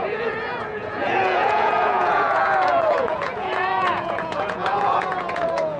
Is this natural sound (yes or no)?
no